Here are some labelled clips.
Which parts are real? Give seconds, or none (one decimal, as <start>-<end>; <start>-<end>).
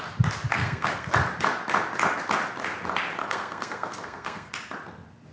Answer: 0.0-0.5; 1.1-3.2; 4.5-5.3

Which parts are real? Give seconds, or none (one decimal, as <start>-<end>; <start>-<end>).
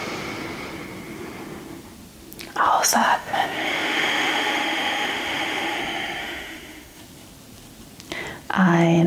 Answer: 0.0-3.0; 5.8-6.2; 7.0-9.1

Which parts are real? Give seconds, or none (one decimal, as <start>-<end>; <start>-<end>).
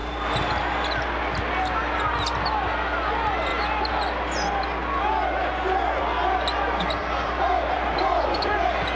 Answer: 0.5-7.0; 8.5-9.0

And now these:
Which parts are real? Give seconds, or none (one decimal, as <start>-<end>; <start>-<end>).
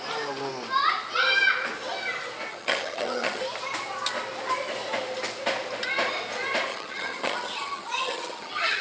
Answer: 0.0-2.5; 3.4-6.7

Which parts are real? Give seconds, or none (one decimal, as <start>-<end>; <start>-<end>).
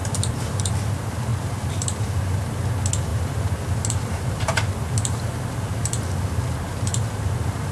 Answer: 0.7-1.3; 2.5-3.1